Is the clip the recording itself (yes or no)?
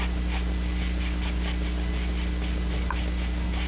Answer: no